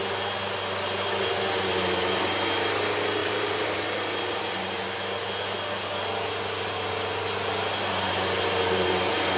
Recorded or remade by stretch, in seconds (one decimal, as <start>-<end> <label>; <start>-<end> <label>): 0.0-3.2 recorded; 3.2-4.4 remade; 4.4-9.4 recorded